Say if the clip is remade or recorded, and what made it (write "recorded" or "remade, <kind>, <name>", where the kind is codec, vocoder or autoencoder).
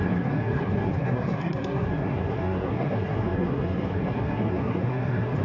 remade, codec, SNAC